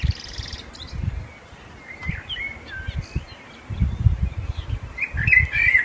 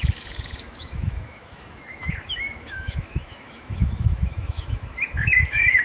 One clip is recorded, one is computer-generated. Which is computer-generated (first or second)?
second